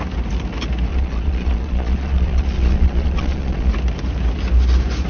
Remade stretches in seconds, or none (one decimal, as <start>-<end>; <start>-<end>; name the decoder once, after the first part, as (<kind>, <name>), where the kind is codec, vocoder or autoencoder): 0.9-3.7 (vocoder, Vocos)